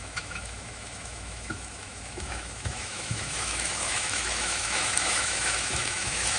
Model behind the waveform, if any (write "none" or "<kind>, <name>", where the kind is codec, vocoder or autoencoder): autoencoder, DAC-VAE